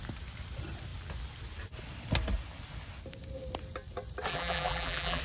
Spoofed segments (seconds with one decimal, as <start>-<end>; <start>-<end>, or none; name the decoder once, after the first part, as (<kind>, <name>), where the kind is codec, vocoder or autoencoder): 4.3-5.2 (vocoder, BigVGAN v2)